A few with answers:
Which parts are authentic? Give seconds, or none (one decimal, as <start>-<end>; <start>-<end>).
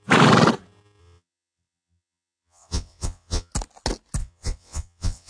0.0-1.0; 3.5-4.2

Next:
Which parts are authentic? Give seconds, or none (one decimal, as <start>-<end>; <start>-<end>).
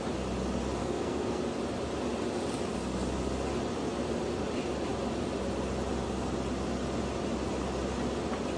0.0-0.8; 1.4-8.6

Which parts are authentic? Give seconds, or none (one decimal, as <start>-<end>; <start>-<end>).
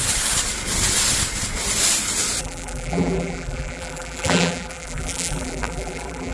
0.0-2.4